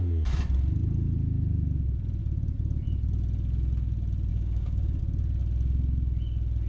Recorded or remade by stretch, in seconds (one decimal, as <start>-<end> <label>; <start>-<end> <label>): 0.0-4.3 recorded; 4.3-5.0 remade; 5.0-6.7 recorded